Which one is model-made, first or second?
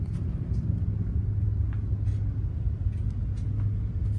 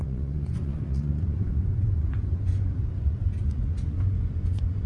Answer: second